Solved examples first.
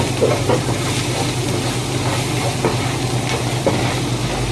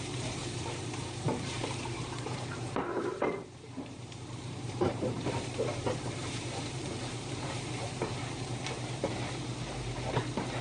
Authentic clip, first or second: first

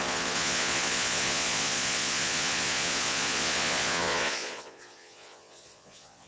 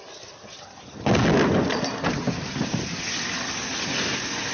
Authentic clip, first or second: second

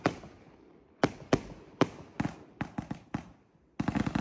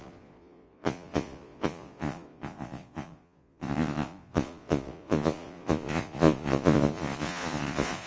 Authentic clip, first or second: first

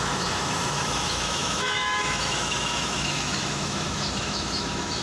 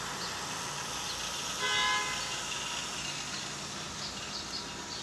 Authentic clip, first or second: second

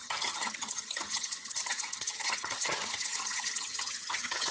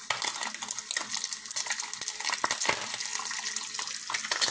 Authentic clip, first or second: second